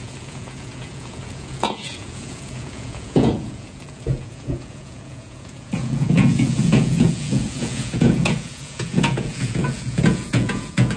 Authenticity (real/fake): fake